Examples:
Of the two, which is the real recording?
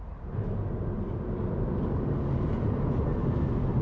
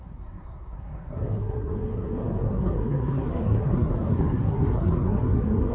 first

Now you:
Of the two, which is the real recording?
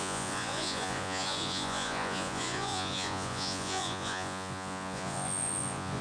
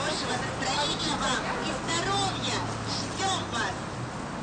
second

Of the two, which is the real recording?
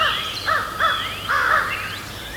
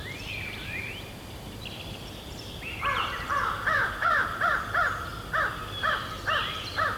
first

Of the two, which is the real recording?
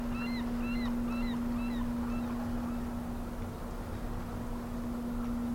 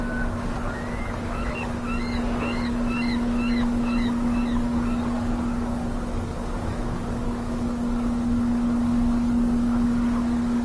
first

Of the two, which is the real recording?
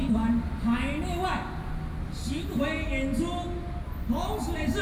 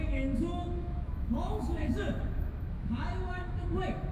first